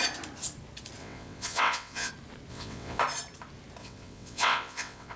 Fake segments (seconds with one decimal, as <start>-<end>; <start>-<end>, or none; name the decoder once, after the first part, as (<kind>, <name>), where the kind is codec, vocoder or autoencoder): 1.0-2.1 (vocoder, WaveNeXt); 2.5-3.0; 3.8-5.2

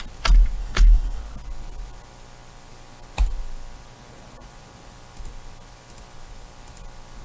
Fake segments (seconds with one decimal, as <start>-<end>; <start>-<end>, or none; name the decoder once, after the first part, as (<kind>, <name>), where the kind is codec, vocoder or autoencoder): 0.6-1.2 (codec, DAC)